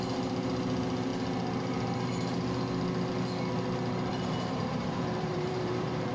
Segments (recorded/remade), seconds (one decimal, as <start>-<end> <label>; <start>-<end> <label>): 0.0-4.1 recorded; 4.1-6.1 remade